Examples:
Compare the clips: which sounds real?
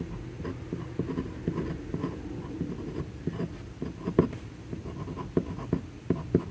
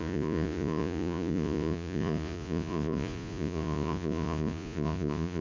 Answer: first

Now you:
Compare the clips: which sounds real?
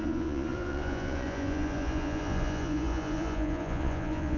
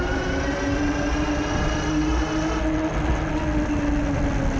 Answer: second